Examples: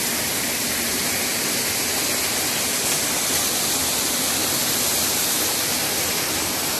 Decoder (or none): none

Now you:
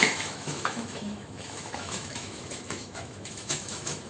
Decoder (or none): autoencoder, DAC-VAE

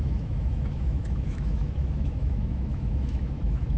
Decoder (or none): autoencoder, DAC-VAE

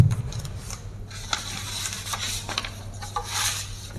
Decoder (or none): none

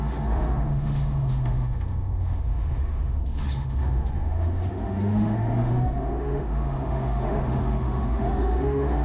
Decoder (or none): autoencoder, DAC-VAE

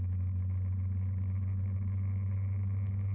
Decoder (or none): none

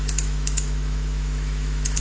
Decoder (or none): autoencoder, DAC-VAE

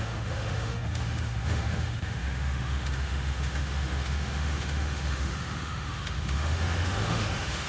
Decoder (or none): autoencoder, DAC-VAE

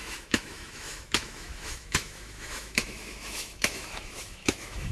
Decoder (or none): autoencoder, DAC-VAE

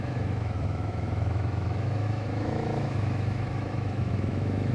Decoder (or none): autoencoder, DAC-VAE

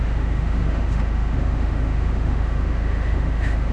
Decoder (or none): autoencoder, DAC-VAE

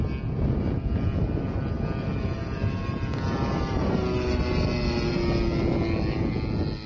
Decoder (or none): none